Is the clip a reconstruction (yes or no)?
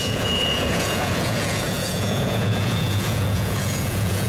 yes